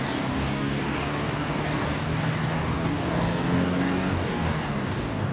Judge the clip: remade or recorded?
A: remade